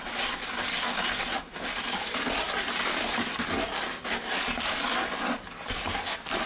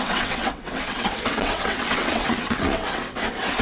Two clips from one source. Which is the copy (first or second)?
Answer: second